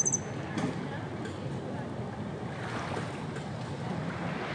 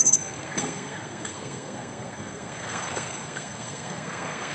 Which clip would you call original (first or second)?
first